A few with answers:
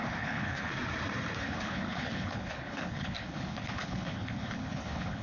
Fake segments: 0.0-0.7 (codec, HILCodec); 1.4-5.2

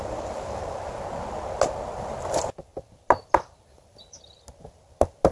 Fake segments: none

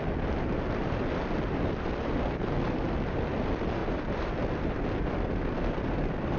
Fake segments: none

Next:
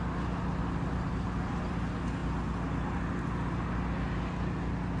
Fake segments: none